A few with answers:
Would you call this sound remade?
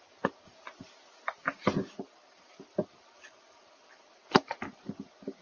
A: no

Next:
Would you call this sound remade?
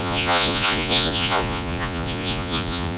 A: yes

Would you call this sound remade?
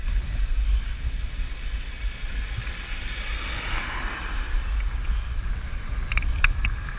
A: no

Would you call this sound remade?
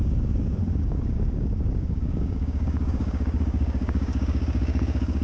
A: yes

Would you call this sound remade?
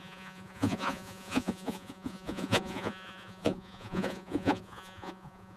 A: yes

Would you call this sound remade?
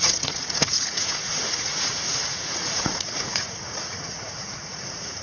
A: yes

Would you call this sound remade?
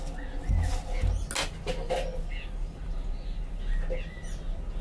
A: no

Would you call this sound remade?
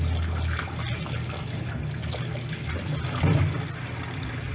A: no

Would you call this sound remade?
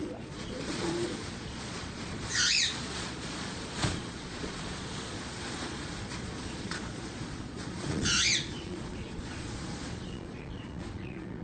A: yes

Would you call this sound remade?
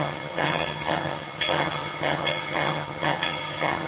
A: yes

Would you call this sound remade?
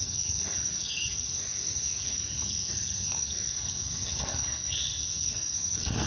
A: yes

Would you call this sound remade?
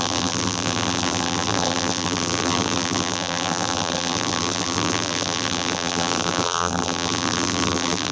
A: yes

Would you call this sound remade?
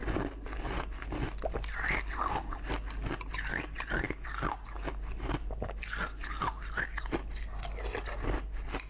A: no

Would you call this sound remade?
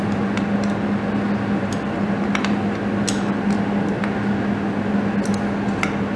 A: no